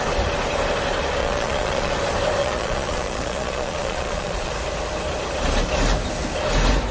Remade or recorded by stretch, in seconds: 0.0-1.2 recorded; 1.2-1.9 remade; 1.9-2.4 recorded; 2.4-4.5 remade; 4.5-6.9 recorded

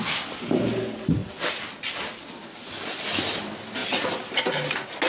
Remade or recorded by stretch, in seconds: 0.0-5.1 recorded

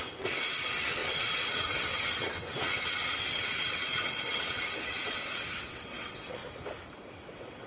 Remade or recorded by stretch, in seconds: 0.0-6.4 remade; 6.4-7.1 recorded; 7.1-7.7 remade

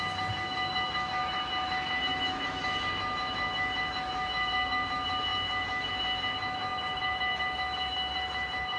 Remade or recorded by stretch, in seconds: 0.0-8.8 remade